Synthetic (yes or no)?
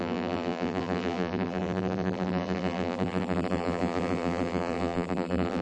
yes